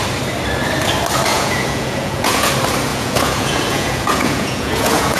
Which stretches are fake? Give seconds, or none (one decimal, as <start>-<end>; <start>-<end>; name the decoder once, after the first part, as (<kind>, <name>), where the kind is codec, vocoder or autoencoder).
1.3-2.5 (vocoder, Vocos); 2.9-5.2